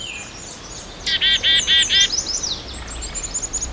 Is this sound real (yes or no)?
yes